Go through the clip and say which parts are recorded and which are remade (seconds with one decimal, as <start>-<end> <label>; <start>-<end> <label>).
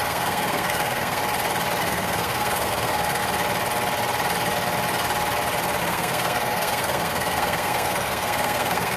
0.0-1.2 remade; 1.2-1.8 recorded; 1.8-3.2 remade; 3.2-5.8 recorded; 5.8-9.0 remade